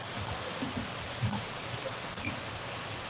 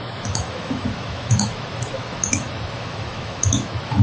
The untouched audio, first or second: first